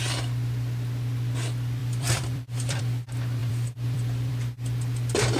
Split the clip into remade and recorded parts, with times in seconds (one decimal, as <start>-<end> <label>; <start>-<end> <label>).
0.0-1.8 recorded; 1.8-2.8 remade; 2.8-3.4 recorded; 3.4-4.3 remade; 4.3-5.4 recorded